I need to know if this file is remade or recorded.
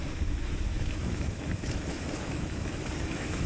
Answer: remade